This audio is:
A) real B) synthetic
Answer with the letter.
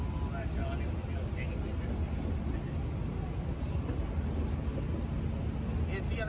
A